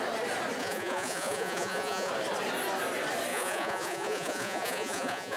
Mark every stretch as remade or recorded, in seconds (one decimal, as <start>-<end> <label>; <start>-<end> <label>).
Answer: 0.0-0.6 recorded; 0.6-2.1 remade; 2.1-3.3 recorded; 3.3-5.4 remade